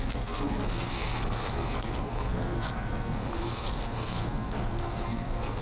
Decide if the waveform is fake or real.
fake